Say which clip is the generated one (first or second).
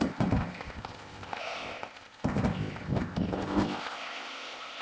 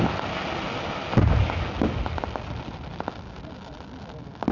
first